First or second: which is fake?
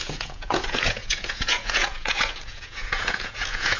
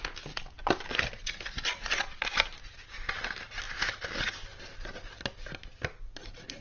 first